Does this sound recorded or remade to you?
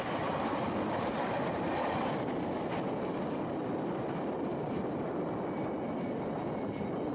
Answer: recorded